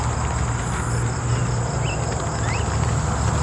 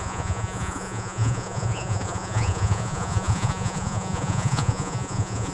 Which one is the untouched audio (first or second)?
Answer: first